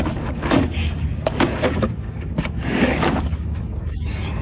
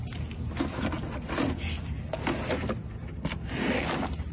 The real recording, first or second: second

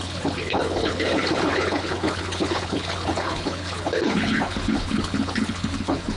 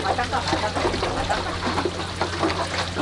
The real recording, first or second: second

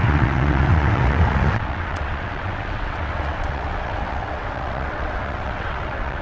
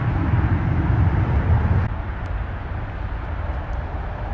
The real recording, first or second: second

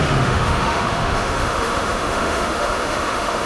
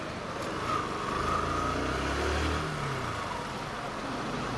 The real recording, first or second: second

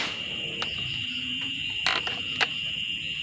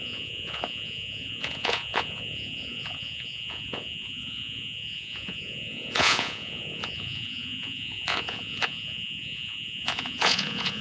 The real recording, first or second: first